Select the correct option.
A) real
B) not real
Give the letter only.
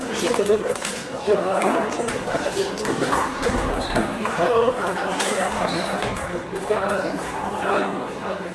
B